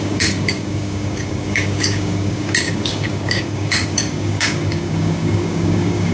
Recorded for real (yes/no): no